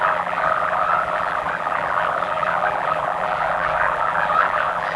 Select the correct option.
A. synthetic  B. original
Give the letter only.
A